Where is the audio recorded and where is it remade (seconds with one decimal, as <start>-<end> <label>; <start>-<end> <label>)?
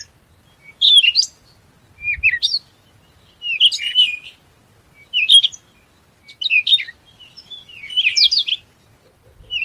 0.0-9.6 recorded